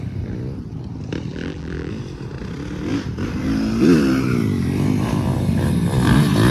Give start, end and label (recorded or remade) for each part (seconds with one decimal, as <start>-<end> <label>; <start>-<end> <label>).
0.0-1.3 recorded; 1.3-1.9 remade; 1.9-6.5 recorded